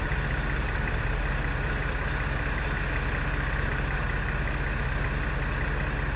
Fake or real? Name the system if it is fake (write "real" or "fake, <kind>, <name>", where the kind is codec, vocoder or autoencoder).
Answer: real